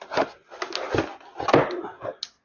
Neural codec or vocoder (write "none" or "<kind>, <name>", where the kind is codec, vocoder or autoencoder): none